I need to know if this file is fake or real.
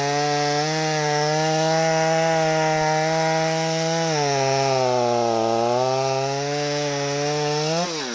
real